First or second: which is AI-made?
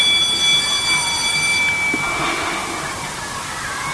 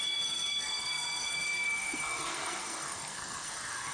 second